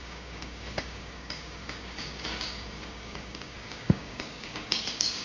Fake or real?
fake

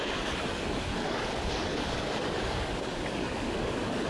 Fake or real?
fake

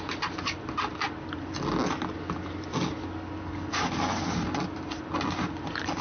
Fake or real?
real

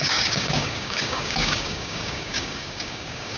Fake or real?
fake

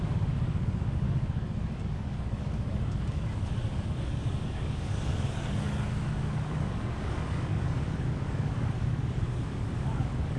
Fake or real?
fake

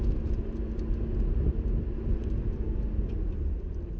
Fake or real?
real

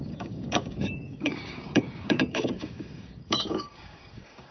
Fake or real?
fake